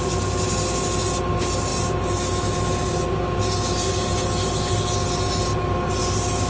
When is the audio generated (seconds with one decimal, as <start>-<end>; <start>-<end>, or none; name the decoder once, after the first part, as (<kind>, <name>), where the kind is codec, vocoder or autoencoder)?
none